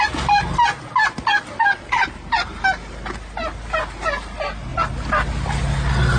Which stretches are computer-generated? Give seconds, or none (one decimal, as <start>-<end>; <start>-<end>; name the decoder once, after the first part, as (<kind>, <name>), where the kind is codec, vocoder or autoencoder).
4.7-5.4 (vocoder, BigVGAN v2)